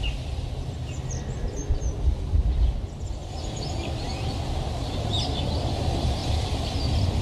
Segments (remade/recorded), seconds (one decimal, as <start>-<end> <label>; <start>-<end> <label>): 0.0-6.2 recorded; 6.2-7.2 remade

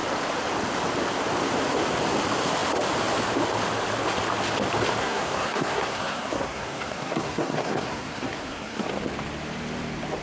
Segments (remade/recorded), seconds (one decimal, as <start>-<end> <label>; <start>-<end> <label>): 0.0-5.0 recorded; 5.0-8.9 remade; 8.9-10.2 recorded

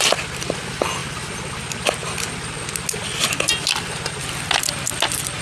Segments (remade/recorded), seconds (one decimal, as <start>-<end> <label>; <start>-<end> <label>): 0.0-5.4 recorded

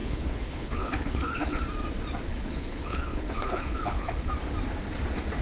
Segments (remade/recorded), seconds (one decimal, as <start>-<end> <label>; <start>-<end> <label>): 0.0-1.6 remade; 1.6-2.3 recorded; 2.3-4.3 remade; 4.3-5.4 recorded

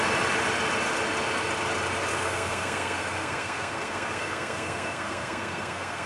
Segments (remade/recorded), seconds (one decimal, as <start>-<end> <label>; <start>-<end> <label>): 0.0-2.1 recorded; 2.1-6.1 remade

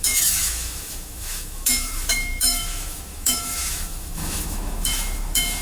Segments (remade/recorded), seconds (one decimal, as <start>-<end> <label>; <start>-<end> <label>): 0.0-5.6 remade

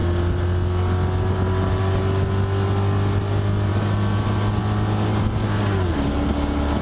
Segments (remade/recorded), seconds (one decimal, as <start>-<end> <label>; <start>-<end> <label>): 0.0-6.8 recorded

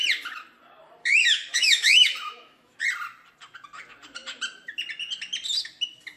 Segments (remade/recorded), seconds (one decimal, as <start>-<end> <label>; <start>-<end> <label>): 0.0-1.0 recorded; 1.0-2.8 remade; 2.8-6.2 recorded